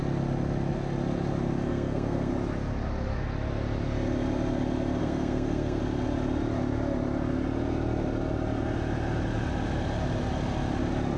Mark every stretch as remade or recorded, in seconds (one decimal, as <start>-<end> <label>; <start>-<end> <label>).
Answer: 0.0-1.7 recorded; 1.7-2.3 remade; 2.3-5.0 recorded; 5.0-5.8 remade; 5.8-11.2 recorded